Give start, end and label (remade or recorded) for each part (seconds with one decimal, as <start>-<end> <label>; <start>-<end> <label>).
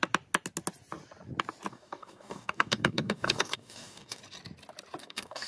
0.0-1.7 recorded; 1.7-4.2 remade; 4.2-5.0 recorded; 5.0-5.5 remade